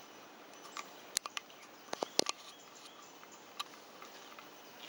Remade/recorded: recorded